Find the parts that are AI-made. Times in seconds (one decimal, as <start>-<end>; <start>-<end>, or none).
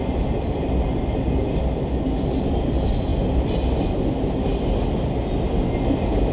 none